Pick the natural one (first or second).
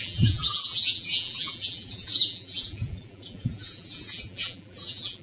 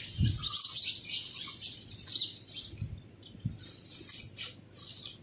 second